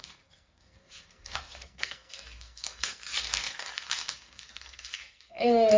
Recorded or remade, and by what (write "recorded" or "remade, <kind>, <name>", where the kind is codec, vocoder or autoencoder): remade, codec, SNAC